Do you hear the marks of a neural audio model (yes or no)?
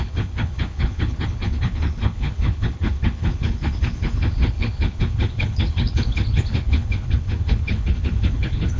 yes